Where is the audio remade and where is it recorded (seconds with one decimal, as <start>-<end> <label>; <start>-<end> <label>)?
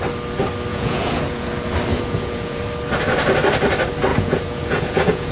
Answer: 0.0-0.7 recorded; 0.7-1.5 remade; 1.5-1.9 recorded; 1.9-2.6 remade; 2.6-4.1 recorded; 4.1-5.3 remade